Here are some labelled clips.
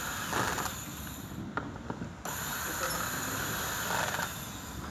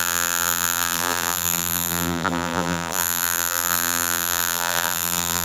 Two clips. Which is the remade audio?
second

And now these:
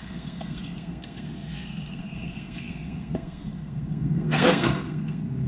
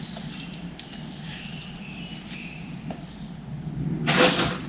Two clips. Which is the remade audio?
first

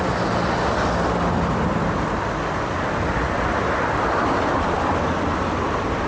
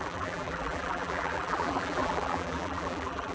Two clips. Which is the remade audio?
second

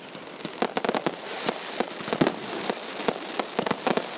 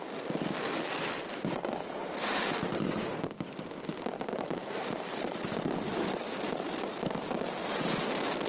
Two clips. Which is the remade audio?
second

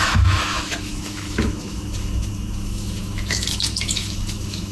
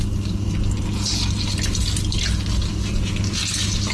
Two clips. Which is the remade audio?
first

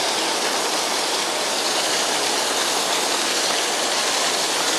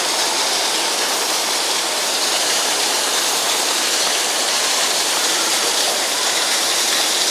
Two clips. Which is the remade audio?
second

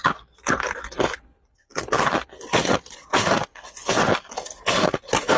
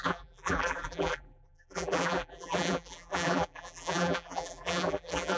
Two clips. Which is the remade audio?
second